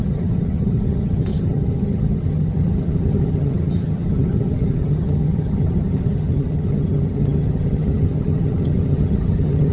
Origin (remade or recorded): remade